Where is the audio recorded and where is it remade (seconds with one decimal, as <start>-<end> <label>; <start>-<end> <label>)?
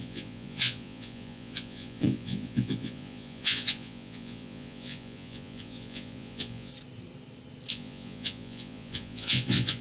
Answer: 0.0-6.7 remade; 6.7-7.7 recorded; 7.7-9.8 remade